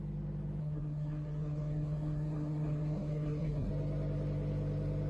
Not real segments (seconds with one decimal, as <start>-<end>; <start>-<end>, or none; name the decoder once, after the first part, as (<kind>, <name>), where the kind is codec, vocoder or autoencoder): 0.6-3.7 (codec, SNAC)

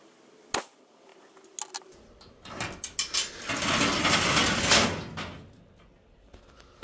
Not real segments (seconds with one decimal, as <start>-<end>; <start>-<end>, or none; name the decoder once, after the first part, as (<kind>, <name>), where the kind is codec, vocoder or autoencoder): none

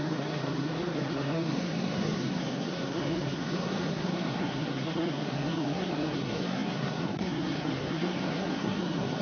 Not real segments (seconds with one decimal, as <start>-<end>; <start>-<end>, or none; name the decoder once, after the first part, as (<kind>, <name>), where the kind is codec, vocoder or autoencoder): 0.0-9.2 (codec, SNAC)

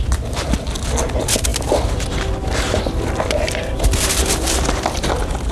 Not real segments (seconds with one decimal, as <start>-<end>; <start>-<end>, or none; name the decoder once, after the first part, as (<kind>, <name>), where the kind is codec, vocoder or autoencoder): none

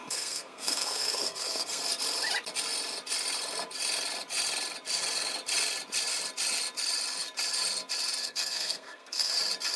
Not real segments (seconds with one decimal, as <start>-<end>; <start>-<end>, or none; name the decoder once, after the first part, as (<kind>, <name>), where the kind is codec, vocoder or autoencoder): 0.0-1.8 (codec, SNAC); 8.2-9.3

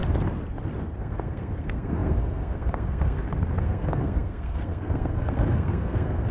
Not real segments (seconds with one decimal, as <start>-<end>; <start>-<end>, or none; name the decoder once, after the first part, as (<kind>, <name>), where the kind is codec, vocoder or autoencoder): 0.8-6.3 (codec, SNAC)